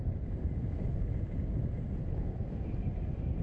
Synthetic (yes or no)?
yes